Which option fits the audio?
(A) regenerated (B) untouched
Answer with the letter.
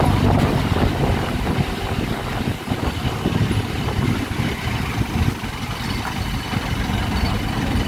B